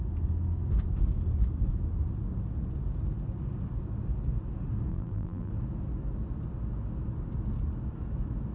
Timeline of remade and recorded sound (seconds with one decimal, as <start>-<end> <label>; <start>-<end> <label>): 0.0-4.9 recorded; 4.9-5.5 remade; 5.5-8.5 recorded